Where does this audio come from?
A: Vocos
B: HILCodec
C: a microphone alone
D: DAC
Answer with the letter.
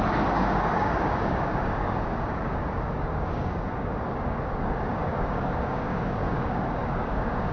D